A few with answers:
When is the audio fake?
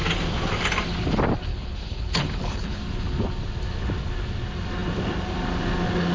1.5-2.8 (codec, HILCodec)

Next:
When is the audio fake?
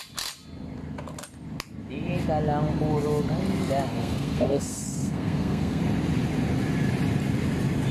3.9-5.8 (codec, SNAC)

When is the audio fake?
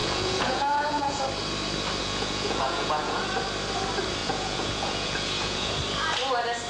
0.0-1.2 (vocoder, Vocos); 2.0-3.2; 4.2-5.7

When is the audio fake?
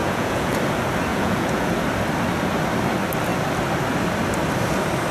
0.0-0.6 (vocoder, Vocos); 1.1-1.7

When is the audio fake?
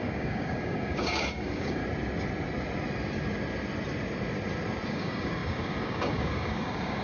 0.0-1.8 (codec, DAC); 4.9-7.0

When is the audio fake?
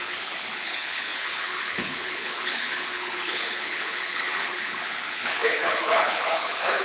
0.0-6.8 (codec, HILCodec)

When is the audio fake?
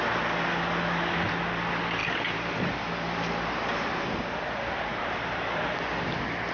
4.9-5.8 (vocoder, BigVGAN v2)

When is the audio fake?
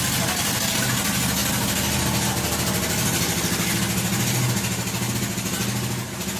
none